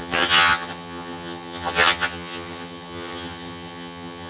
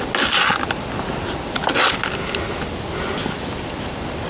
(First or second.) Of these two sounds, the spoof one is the first